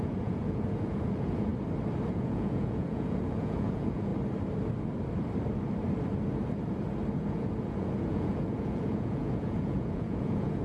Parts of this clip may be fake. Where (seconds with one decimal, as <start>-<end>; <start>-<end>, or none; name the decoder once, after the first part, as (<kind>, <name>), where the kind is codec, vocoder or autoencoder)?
0.0-1.5 (vocoder, Vocos); 2.1-4.1; 7.1-10.6